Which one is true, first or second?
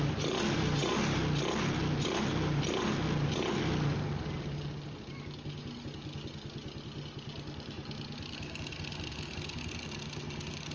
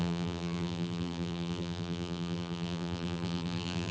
first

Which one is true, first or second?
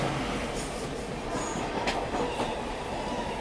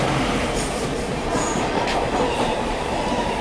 first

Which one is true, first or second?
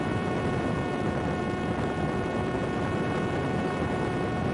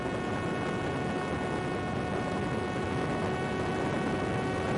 second